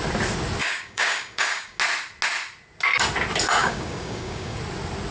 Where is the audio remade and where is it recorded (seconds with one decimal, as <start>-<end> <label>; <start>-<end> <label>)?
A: 0.0-0.6 recorded; 0.6-1.8 remade; 1.8-3.6 recorded; 3.6-4.6 remade; 4.6-5.1 recorded